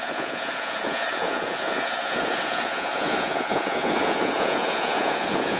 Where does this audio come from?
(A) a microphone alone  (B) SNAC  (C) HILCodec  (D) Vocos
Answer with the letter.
D